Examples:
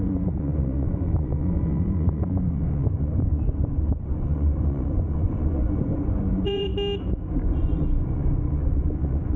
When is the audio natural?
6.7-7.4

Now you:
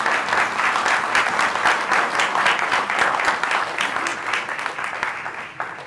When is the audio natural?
0.0-5.9

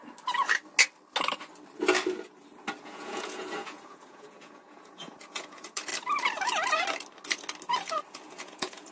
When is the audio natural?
0.0-2.8; 5.9-8.1